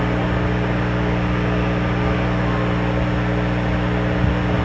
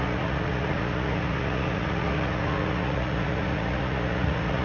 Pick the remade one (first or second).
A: second